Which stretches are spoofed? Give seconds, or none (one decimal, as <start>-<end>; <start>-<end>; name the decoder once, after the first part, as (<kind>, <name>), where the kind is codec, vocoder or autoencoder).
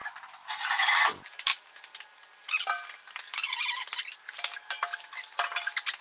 none